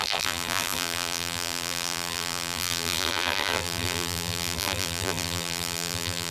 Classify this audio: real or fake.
fake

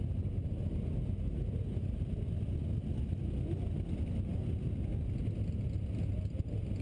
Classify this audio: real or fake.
real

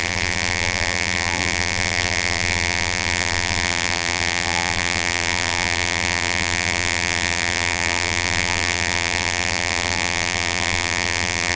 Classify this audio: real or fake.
fake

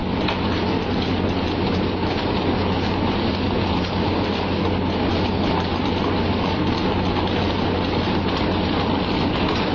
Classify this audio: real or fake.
real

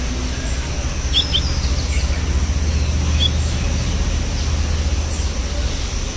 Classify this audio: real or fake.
real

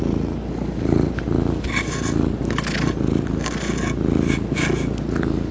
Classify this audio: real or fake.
real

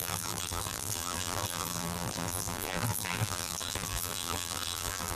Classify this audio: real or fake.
fake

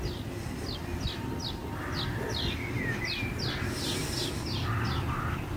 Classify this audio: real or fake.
real